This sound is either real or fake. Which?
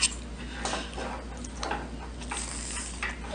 real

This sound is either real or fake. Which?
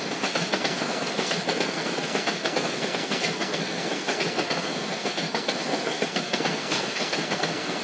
fake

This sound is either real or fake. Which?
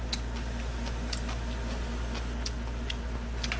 real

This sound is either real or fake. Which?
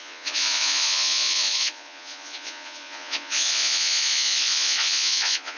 fake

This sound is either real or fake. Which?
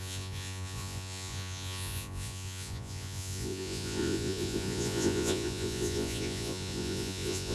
fake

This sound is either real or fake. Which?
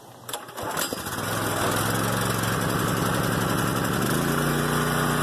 real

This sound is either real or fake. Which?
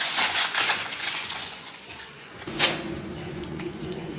fake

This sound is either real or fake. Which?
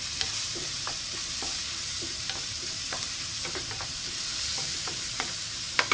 fake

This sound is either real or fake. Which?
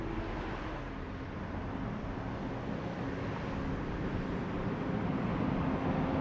real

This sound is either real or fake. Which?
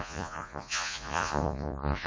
fake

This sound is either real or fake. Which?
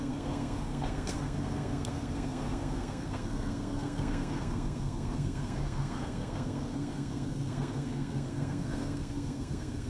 fake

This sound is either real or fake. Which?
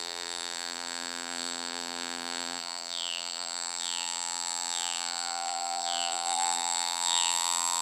fake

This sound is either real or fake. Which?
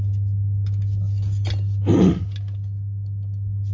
real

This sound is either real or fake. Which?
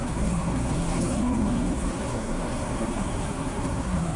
fake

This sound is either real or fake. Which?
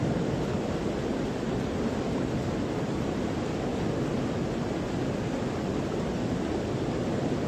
real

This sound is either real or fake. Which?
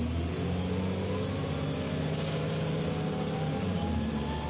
real